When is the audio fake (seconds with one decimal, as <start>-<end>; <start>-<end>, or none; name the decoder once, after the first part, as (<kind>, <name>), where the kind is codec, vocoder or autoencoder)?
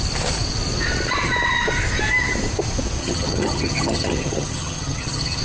3.0-5.4 (vocoder, HiFi-GAN)